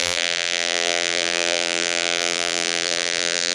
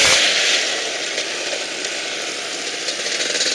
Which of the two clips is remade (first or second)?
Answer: first